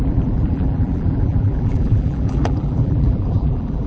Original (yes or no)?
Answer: no